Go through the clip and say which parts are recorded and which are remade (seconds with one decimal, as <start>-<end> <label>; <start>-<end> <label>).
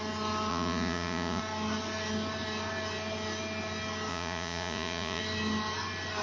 0.0-0.5 recorded; 0.5-1.4 remade; 1.4-4.1 recorded; 4.1-5.2 remade; 5.2-6.2 recorded